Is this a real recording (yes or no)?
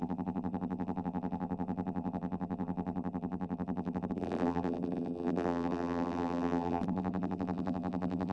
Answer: no